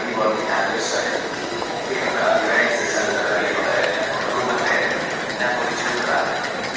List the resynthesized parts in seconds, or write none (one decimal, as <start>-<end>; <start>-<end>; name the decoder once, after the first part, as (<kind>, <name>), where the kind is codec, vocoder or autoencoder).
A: 1.4-3.2 (autoencoder, DAC-VAE)